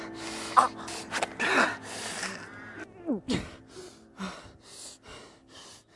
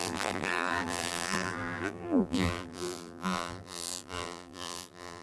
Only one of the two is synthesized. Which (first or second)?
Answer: second